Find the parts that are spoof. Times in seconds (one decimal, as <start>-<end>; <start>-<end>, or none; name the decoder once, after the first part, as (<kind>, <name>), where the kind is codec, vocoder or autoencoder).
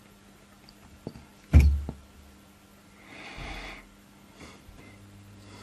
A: none